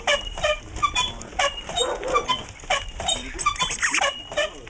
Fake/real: fake